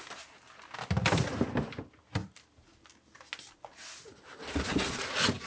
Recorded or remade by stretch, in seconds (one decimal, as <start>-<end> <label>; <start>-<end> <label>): 0.0-5.5 recorded